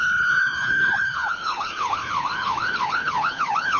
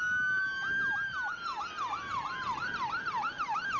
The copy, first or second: first